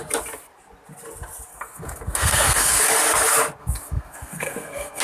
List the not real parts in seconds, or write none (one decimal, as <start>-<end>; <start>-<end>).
1.5-2.8; 3.6-5.0